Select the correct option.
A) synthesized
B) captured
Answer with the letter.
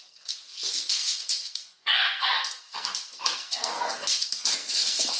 A